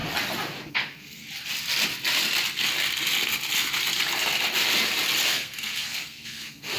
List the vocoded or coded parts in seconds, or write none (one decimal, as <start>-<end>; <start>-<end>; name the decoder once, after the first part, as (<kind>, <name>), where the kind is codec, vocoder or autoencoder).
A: 0.7-1.2 (codec, SNAC); 5.3-6.8